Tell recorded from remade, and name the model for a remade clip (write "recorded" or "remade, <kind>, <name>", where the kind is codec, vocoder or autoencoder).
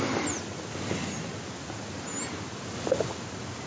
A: recorded